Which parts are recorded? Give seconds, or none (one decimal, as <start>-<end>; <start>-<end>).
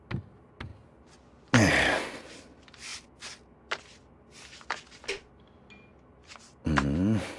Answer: 0.0-7.4